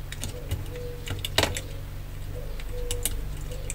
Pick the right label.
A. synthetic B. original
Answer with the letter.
B